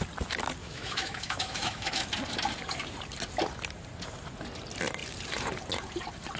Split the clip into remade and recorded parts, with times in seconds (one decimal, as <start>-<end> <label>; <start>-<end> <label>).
0.0-0.6 recorded; 0.6-2.1 remade; 2.1-6.4 recorded